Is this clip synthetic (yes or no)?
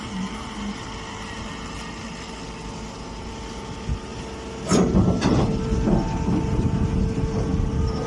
no